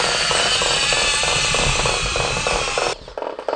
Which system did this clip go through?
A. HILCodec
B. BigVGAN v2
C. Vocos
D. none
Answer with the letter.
B